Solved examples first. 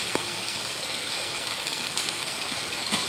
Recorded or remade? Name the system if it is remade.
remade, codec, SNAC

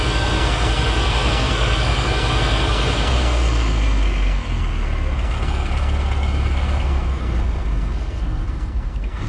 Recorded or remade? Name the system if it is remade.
remade, codec, SNAC